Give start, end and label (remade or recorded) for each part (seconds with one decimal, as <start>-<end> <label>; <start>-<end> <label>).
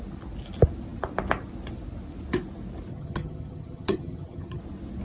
0.0-2.9 recorded; 2.9-4.6 remade; 4.6-5.0 recorded